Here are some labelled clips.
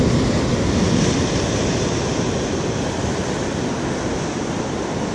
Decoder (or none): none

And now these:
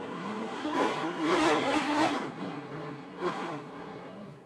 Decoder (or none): codec, SNAC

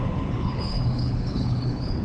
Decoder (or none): codec, HILCodec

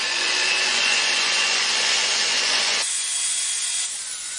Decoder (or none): vocoder, Vocos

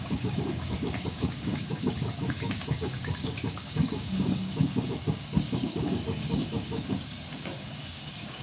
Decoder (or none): codec, DAC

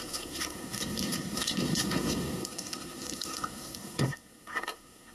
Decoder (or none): codec, SNAC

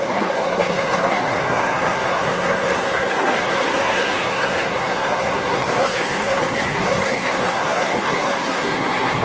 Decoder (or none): codec, SNAC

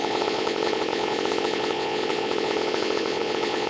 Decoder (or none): vocoder, Vocos